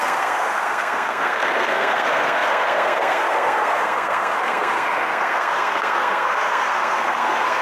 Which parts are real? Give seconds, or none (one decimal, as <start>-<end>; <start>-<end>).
none